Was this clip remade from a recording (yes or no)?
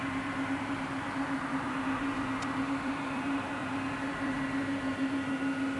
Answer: yes